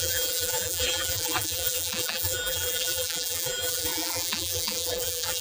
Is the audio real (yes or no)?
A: no